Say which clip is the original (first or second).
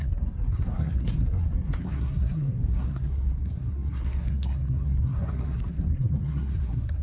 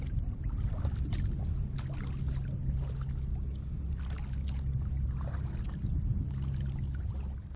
second